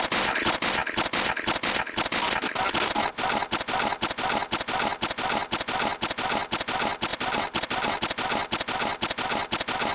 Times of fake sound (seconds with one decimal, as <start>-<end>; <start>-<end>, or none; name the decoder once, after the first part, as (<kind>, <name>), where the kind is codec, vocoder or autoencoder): none